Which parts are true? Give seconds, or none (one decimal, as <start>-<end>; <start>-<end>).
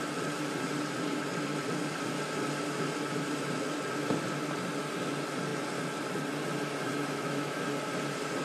0.0-7.0; 7.6-8.4